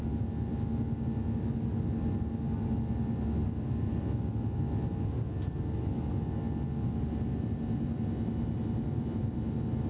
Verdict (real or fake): real